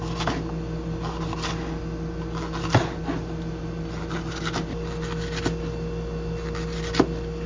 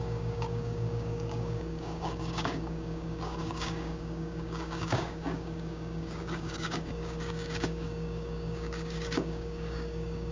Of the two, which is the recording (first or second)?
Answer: first